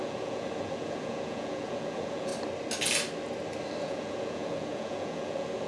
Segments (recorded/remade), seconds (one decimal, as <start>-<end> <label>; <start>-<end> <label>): 0.0-2.3 remade; 2.3-3.8 recorded; 3.8-5.7 remade